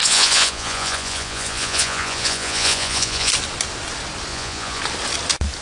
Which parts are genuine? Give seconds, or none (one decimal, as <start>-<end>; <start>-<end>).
3.3-4.3; 4.8-5.6